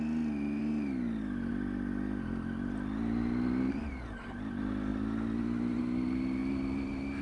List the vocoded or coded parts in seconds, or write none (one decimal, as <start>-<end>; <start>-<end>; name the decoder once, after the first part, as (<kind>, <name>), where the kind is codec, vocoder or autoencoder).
none